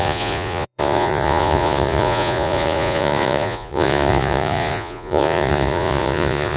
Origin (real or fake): fake